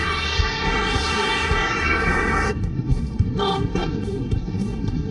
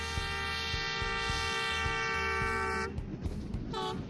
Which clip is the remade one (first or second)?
first